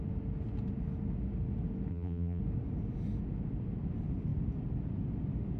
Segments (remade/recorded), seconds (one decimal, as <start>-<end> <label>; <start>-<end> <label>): 0.0-1.9 recorded; 1.9-2.4 remade; 2.4-5.6 recorded